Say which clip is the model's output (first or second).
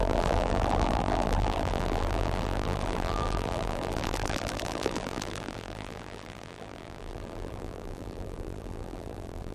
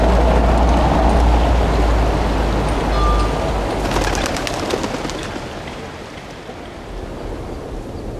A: first